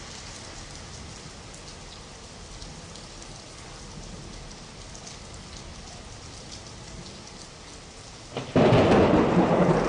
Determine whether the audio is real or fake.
real